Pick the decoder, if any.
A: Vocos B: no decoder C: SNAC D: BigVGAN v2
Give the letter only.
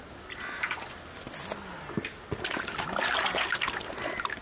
B